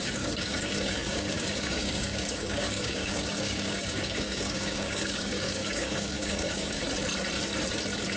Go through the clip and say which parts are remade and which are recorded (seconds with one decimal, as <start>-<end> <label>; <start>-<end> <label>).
0.0-6.8 remade; 6.8-8.2 recorded